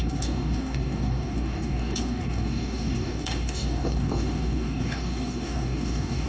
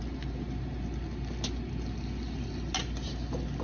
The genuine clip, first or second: second